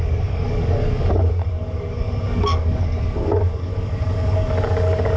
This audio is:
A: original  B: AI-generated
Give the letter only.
B